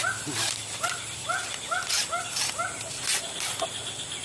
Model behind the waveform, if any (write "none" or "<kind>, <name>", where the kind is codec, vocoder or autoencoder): none